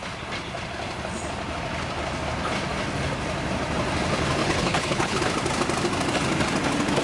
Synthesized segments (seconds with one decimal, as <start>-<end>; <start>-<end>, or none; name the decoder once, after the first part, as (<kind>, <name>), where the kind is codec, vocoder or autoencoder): 4.4-5.2 (codec, HILCodec)

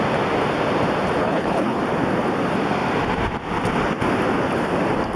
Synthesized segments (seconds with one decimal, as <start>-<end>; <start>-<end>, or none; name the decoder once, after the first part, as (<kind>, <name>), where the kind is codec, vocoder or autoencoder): 1.2-1.8 (codec, HILCodec)

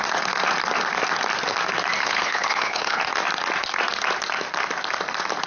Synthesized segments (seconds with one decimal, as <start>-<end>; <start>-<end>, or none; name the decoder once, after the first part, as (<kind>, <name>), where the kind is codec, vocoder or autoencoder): 2.0-3.0 (codec, HILCodec)

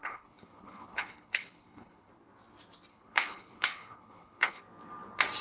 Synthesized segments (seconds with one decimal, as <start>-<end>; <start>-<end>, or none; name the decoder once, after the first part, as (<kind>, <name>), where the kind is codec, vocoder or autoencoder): 0.0-2.1 (codec, HILCodec); 2.9-4.6

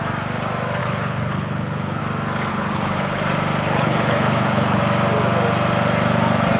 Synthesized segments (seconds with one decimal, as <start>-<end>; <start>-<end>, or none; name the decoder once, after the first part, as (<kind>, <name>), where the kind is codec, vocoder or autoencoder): 0.8-2.0 (codec, HILCodec); 2.5-3.2; 3.6-4.8

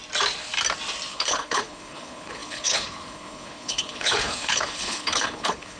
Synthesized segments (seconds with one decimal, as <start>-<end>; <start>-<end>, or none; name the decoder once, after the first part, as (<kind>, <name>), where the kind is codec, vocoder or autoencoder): 1.1-5.8 (codec, HILCodec)

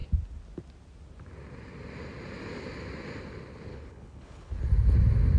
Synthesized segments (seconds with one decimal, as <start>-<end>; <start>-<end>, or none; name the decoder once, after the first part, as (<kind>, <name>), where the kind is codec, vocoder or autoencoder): 3.7-4.5 (codec, HILCodec)

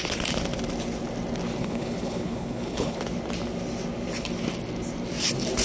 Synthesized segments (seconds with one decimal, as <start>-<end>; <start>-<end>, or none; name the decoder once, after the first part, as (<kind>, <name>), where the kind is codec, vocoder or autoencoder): 1.6-3.0 (codec, HILCodec)